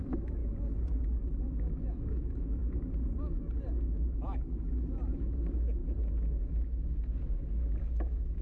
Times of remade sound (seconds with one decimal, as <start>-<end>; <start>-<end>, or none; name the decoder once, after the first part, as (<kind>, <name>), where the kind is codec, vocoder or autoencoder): 0.0-0.4 (autoencoder, DAC-VAE); 1.4-2.6; 3.9-5.8; 6.4-8.4